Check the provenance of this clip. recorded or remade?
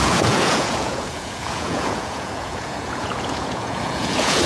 remade